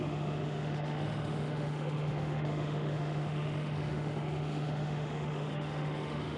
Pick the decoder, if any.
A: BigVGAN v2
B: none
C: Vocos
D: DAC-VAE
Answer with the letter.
D